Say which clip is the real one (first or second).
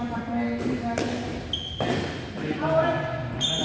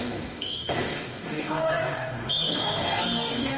first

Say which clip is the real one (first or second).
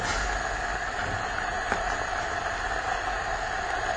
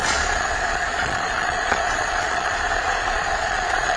first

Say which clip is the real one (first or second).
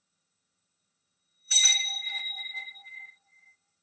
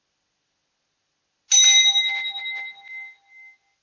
second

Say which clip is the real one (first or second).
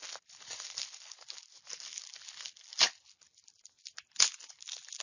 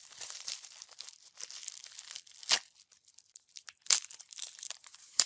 first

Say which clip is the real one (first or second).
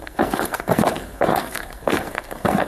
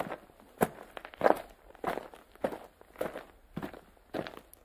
second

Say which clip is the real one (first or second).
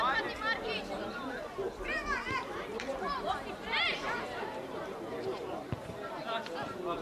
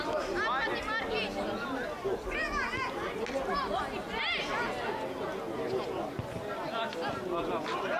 second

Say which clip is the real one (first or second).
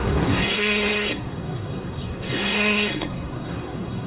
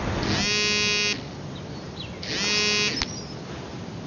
second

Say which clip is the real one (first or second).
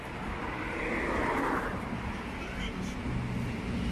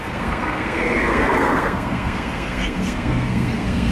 first